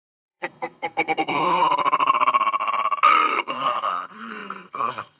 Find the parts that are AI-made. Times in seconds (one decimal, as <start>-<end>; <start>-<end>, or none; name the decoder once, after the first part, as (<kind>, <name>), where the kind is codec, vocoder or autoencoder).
0.0-1.6 (codec, SNAC); 3.3-5.2